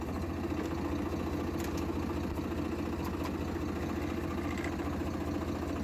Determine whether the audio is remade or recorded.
recorded